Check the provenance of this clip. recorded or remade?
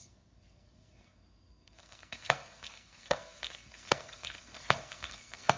remade